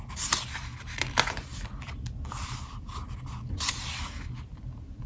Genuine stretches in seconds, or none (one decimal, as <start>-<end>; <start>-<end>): 0.0-5.1